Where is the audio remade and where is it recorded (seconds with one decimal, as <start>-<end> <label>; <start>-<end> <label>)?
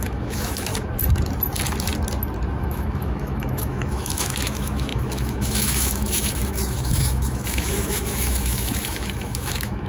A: 0.0-0.7 remade; 0.7-2.6 recorded; 2.6-9.9 remade